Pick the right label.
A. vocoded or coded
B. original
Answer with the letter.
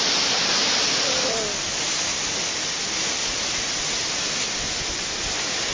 B